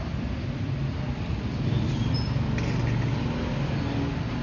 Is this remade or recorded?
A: recorded